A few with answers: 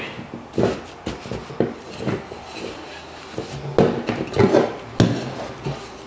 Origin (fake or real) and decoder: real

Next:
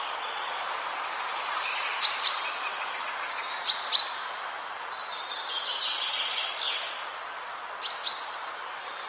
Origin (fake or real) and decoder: real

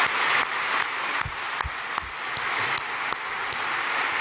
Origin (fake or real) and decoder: real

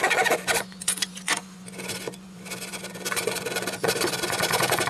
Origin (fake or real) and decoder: fake, vocoder, Vocos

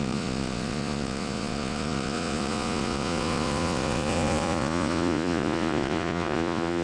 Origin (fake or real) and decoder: fake, vocoder, Vocos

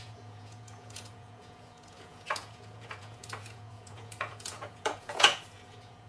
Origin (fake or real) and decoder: fake, vocoder, Vocos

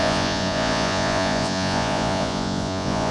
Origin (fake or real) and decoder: fake, vocoder, Vocos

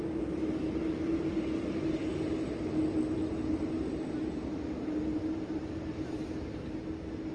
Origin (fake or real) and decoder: real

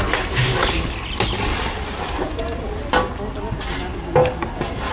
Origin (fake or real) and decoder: real